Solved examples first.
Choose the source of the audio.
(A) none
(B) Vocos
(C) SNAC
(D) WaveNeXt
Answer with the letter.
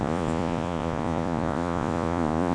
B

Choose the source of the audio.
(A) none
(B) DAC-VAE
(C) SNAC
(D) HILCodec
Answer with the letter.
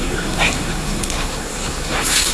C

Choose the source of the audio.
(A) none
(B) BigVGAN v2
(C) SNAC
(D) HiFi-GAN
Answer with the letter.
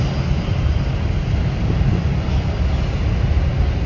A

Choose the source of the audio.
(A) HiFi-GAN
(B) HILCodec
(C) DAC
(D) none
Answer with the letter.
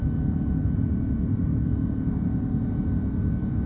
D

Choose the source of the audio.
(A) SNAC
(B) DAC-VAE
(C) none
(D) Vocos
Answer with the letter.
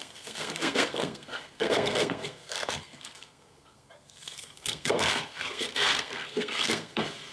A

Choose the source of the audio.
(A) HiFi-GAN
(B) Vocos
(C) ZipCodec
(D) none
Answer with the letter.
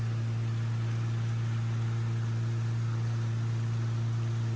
D